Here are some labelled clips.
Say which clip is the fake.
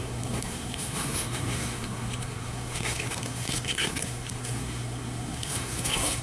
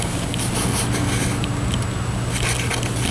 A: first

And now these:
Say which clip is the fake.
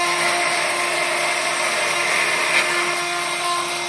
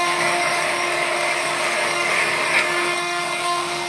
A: second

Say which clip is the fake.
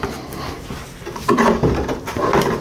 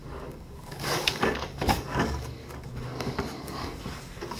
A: second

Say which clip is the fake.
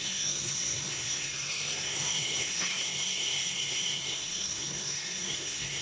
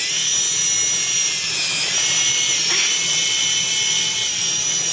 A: first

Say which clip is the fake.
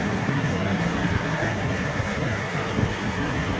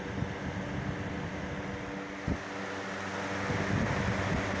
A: first